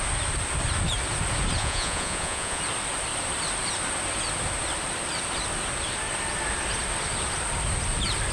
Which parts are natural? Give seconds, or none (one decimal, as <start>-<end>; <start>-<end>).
0.0-1.6; 2.6-8.3